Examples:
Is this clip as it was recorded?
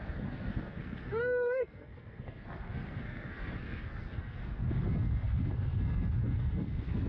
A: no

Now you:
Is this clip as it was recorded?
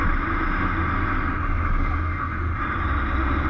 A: yes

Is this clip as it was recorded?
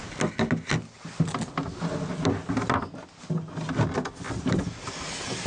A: yes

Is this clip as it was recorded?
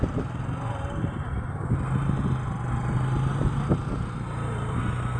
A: yes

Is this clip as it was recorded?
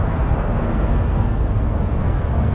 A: no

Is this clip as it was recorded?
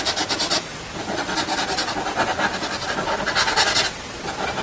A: yes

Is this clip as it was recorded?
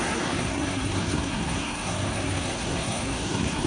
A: no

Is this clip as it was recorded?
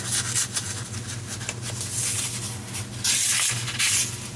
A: yes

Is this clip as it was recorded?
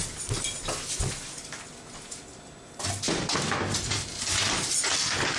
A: yes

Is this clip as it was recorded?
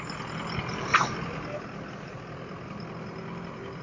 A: yes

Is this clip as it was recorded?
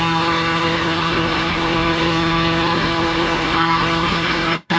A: no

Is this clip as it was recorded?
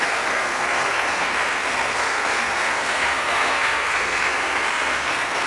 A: no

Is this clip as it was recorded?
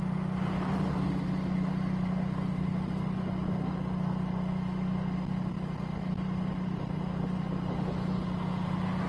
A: yes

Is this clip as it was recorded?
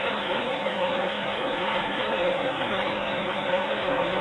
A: no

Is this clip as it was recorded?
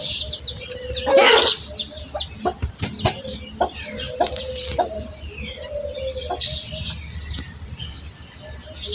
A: yes